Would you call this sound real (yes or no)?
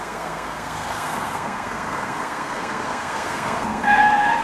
no